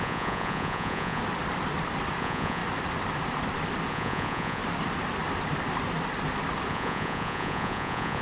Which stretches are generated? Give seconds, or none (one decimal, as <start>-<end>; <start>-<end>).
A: 0.0-1.2; 2.2-2.6; 3.9-4.6; 6.7-8.2